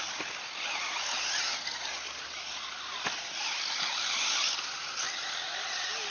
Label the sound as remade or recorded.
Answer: recorded